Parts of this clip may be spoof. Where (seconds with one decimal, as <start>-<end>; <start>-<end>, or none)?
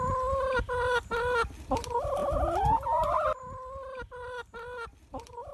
none